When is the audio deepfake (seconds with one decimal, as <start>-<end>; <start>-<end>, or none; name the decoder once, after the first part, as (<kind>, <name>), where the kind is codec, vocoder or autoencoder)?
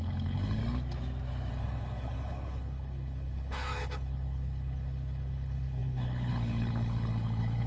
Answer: 0.0-0.6 (codec, HILCodec); 1.5-7.7